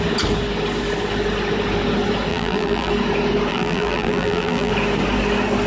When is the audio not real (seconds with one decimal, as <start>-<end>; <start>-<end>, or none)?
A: 2.3-2.9; 3.5-4.7